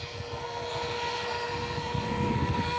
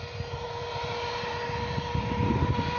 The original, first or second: second